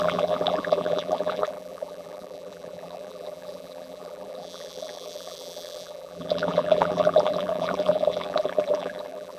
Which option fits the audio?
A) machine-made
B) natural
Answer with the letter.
A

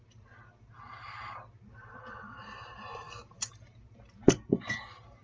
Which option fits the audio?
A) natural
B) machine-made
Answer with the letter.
A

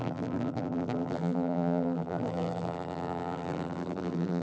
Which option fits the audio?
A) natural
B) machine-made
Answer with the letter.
B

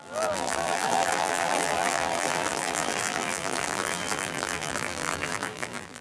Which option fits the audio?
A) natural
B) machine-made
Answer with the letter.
B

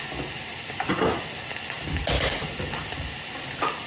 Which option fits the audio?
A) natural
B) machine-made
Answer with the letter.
A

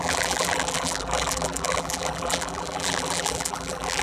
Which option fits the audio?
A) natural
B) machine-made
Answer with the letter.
B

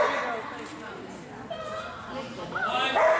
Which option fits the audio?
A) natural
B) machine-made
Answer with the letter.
A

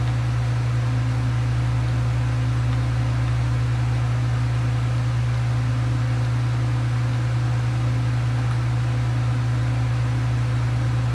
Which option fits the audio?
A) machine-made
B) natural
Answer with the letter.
B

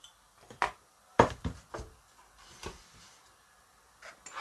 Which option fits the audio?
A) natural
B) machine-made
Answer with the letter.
A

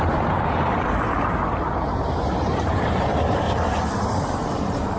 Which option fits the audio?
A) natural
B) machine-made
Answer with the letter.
B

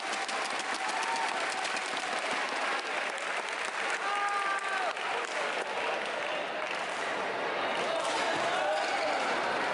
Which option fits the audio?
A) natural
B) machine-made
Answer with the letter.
A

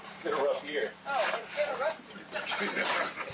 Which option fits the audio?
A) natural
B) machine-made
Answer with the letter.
B